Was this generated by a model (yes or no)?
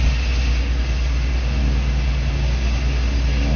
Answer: no